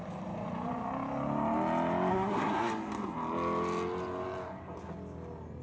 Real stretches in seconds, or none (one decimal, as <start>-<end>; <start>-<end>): 0.0-2.1; 2.7-5.6